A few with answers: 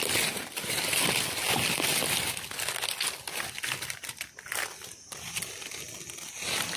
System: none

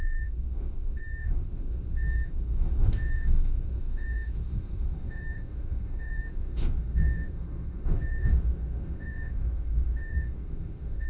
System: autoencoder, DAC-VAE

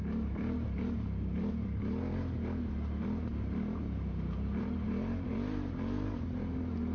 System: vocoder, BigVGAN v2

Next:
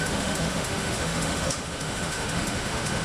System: autoencoder, DAC-VAE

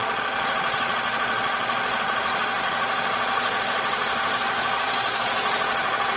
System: vocoder, Vocos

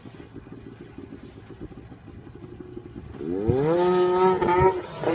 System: none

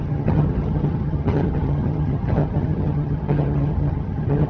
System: vocoder, HiFi-GAN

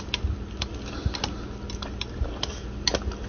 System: none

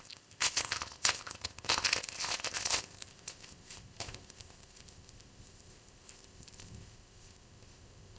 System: codec, ZipCodec